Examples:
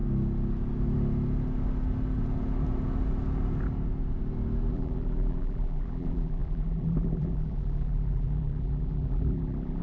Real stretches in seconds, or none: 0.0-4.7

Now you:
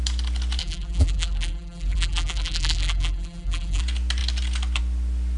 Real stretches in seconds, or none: 0.0-0.6; 3.8-5.4

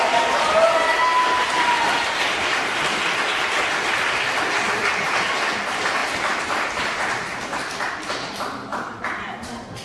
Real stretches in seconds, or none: 0.0-6.0; 7.0-8.7; 9.2-9.8

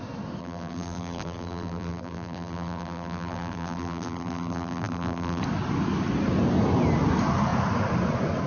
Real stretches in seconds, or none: 0.0-0.4; 5.4-8.5